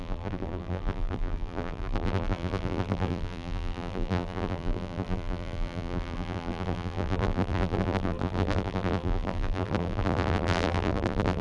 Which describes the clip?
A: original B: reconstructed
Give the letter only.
B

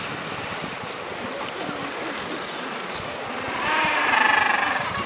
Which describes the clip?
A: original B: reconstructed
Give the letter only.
A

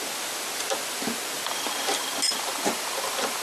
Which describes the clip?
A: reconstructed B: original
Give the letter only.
B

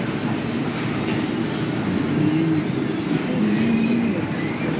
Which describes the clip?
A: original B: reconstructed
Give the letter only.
A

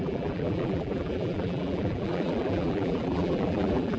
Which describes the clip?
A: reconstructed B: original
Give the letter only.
A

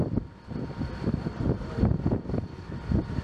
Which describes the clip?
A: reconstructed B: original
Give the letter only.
B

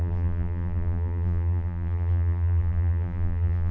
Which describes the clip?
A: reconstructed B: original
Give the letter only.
A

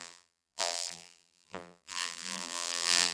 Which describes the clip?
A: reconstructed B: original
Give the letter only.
A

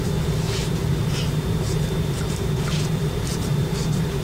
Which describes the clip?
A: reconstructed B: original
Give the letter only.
A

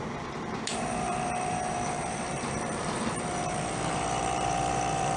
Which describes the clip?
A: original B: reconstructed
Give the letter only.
B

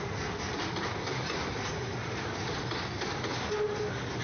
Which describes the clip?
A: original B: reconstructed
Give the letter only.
A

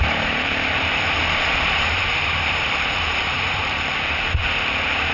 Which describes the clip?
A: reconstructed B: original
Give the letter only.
A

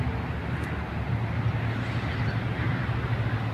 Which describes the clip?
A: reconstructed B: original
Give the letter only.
B